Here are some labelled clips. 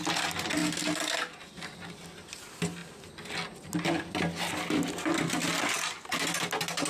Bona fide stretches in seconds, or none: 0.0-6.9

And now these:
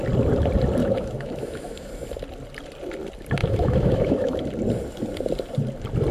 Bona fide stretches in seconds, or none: 0.0-0.8; 1.9-3.4; 4.5-6.1

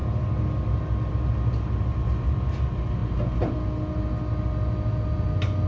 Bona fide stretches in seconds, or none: 0.0-5.7